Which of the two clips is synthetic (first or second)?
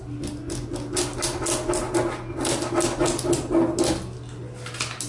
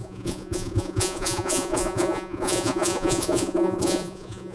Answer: second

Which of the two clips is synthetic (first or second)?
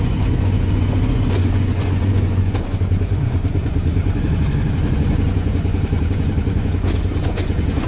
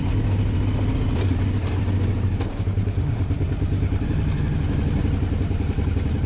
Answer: first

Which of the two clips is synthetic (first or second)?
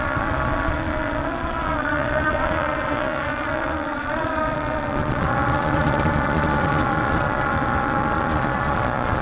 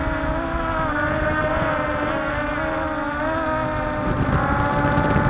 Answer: first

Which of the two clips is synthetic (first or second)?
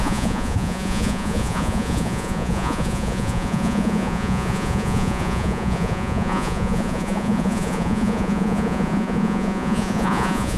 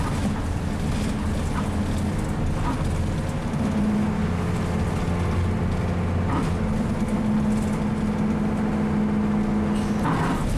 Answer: first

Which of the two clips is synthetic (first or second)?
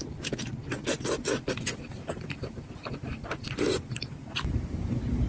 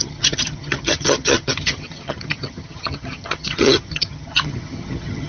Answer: second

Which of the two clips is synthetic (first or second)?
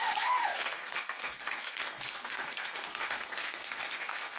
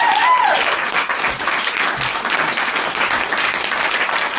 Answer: first